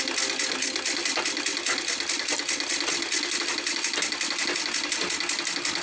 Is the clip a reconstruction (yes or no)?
no